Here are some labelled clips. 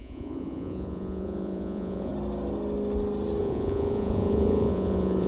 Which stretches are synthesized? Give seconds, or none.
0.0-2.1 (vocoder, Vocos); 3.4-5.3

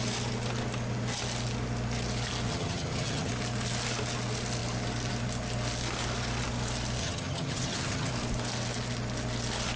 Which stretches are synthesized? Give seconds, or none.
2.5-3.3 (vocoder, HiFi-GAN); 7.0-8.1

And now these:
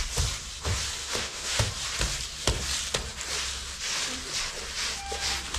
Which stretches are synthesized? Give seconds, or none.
1.0-1.7 (autoencoder, DAC-VAE)